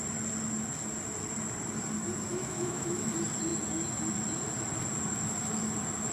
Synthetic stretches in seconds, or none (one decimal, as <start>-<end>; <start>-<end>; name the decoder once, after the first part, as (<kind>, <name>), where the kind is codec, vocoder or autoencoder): 2.3-3.1 (autoencoder, DAC-VAE)